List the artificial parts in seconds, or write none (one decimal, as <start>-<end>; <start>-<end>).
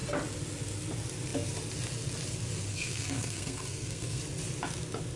2.7-4.2